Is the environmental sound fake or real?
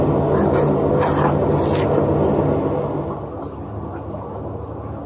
real